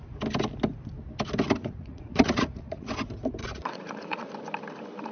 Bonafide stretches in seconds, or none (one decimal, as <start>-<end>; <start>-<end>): 0.0-1.6; 2.9-3.4; 4.3-5.1